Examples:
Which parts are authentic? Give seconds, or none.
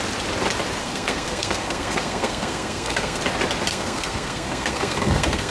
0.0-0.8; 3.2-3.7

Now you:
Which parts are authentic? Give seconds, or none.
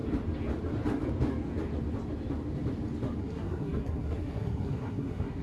0.0-3.2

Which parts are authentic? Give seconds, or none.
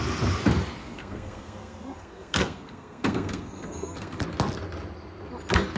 0.0-0.8; 4.2-5.8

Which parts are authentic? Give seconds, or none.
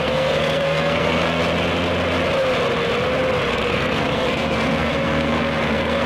1.4-3.5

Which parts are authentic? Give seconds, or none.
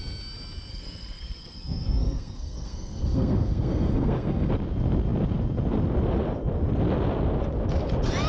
0.0-0.7; 4.5-8.3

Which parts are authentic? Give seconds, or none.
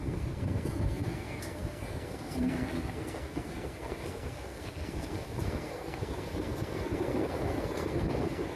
none